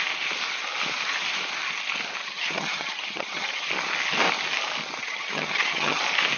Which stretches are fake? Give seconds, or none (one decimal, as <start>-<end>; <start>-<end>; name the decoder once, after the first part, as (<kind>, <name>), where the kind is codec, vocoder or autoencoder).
2.2-3.7 (vocoder, HiFi-GAN); 5.0-6.0